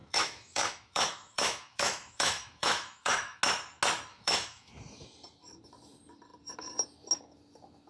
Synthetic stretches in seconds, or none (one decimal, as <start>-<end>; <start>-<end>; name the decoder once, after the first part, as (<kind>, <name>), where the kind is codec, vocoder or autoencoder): 0.0-3.4 (autoencoder, DAC-VAE); 4.1-4.7